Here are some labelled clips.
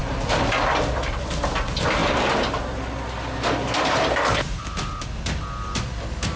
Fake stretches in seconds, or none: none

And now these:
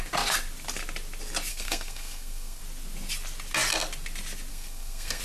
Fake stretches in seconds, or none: 1.5-2.6 (codec, SNAC); 4.5-5.2

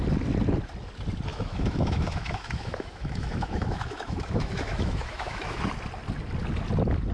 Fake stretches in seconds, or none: 1.3-5.6 (autoencoder, DAC-VAE)

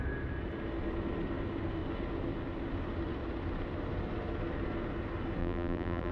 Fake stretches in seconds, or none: 5.4-6.1 (vocoder, BigVGAN v2)

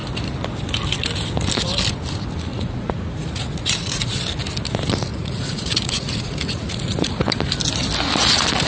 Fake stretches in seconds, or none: 2.5-4.2 (vocoder, Vocos); 5.1-7.3